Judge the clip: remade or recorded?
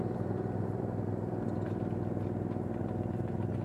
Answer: recorded